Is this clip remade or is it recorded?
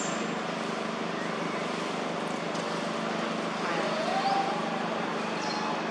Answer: recorded